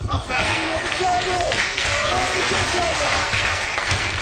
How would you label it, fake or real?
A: fake